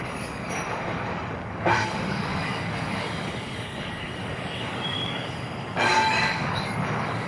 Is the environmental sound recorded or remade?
remade